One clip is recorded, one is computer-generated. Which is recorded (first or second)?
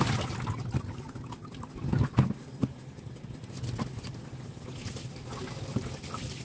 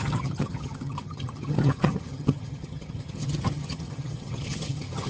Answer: first